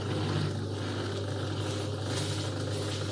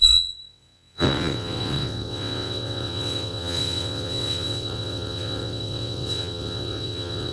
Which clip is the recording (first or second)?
first